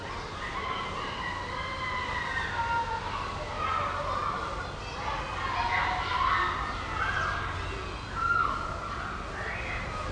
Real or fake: real